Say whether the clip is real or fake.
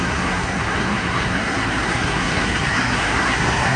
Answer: fake